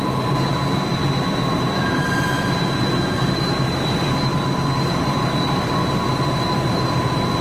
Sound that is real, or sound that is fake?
fake